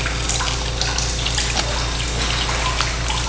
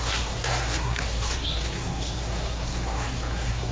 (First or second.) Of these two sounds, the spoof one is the second